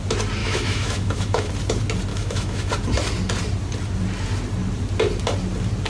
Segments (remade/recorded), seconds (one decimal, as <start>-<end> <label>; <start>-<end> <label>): 0.0-0.4 recorded; 0.4-1.5 remade; 1.5-2.1 recorded; 2.1-2.7 remade; 2.7-5.9 recorded